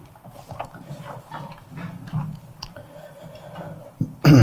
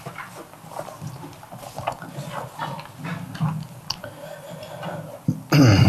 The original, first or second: second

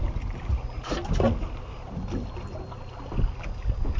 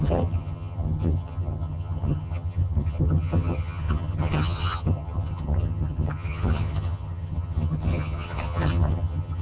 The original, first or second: first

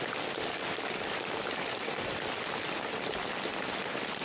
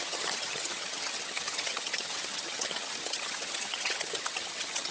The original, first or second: first